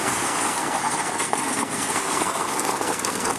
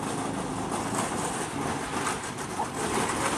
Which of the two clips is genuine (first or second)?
second